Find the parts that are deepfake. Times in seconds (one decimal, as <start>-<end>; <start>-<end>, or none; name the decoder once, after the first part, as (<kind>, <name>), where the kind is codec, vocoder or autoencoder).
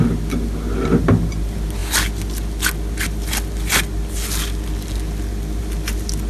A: none